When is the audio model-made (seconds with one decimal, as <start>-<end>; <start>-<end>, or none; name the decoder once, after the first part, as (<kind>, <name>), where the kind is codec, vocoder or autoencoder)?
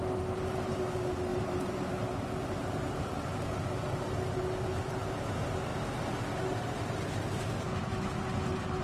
1.3-1.9 (vocoder, BigVGAN v2)